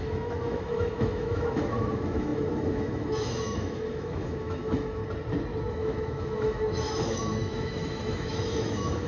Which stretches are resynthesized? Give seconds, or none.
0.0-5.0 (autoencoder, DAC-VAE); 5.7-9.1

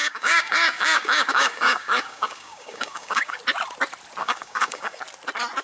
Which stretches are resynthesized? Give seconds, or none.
0.0-3.4 (codec, DAC); 4.2-5.0

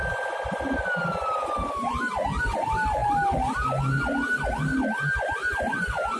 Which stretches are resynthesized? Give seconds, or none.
none

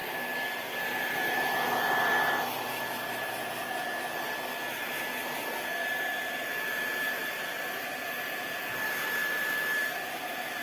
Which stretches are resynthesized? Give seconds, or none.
1.3-2.1 (vocoder, BigVGAN v2); 7.2-10.6

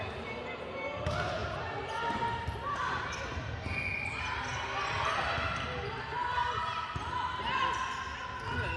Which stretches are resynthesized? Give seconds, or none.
none